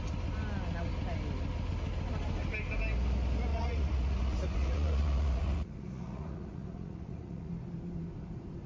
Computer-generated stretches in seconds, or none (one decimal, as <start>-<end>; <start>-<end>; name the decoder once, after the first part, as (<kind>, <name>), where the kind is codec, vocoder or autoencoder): 3.5-7.5 (vocoder, Vocos)